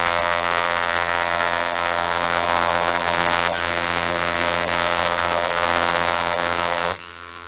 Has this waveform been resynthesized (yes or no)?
yes